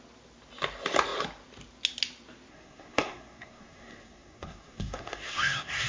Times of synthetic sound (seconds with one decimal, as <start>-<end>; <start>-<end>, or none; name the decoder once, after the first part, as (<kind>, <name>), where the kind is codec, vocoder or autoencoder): 2.5-5.9 (codec, SNAC)